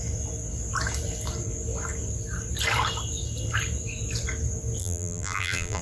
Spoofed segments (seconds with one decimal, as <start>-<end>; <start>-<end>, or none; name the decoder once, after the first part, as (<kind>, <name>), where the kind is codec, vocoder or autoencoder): 4.8-5.8 (vocoder, BigVGAN v2)